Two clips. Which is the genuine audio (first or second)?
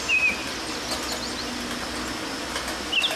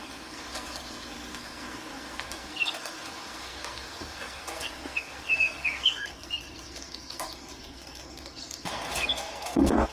first